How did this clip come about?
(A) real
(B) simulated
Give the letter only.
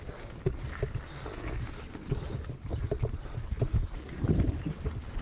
A